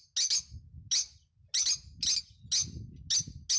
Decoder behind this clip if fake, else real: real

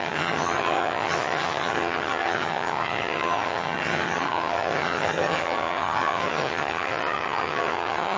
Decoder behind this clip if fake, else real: fake, vocoder, HiFi-GAN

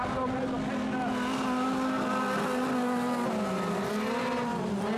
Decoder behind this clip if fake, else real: real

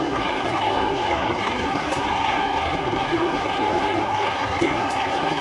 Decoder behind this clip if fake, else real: fake, codec, SNAC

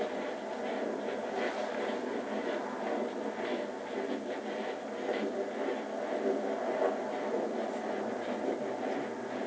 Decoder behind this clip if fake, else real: real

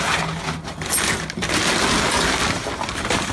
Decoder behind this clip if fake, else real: real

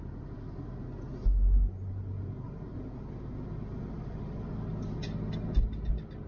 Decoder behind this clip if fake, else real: real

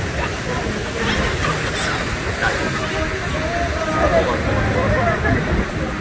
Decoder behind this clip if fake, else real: real